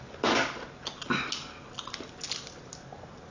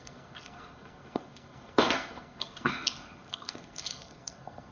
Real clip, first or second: first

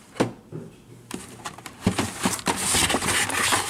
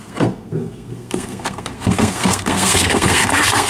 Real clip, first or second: first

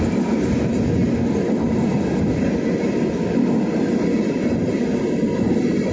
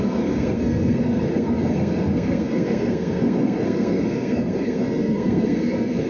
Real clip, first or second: first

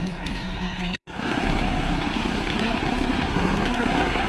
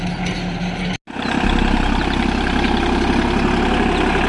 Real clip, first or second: second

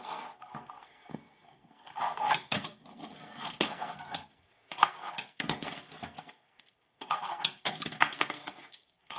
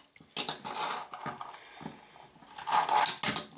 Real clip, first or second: second